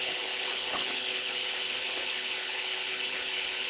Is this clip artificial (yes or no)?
yes